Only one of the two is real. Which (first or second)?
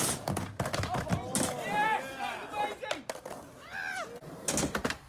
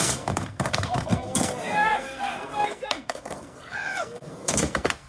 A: first